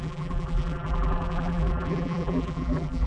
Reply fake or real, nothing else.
fake